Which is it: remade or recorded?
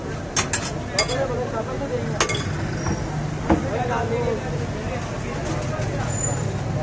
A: recorded